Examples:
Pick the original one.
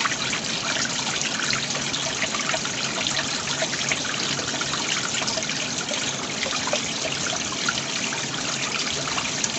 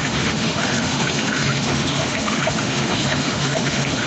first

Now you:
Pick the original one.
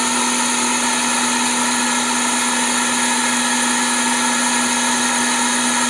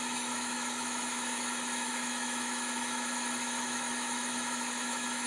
first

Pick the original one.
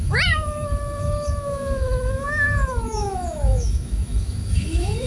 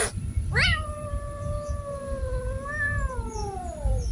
second